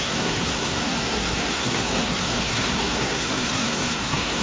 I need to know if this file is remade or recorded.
remade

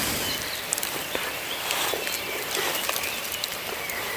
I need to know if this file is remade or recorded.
remade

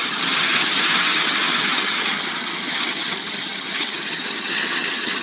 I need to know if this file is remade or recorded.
remade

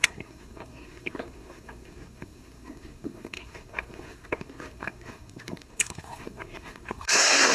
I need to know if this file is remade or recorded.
remade